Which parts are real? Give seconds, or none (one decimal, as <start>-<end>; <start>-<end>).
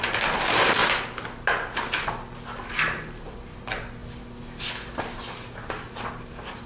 0.0-6.7